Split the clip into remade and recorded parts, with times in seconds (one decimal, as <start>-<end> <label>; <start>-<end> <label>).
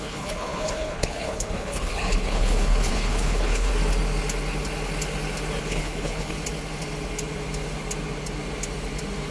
0.0-3.7 remade; 3.7-5.6 recorded; 5.6-6.3 remade; 6.3-9.3 recorded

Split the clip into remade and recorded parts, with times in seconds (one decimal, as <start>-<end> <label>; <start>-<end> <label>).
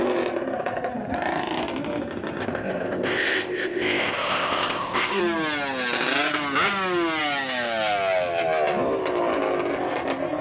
0.0-2.4 recorded; 2.4-5.2 remade; 5.2-10.4 recorded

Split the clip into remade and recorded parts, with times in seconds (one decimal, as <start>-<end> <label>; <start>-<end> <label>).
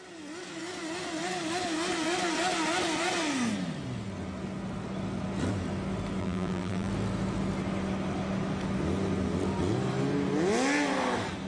0.0-6.2 recorded; 6.2-6.9 remade; 6.9-11.5 recorded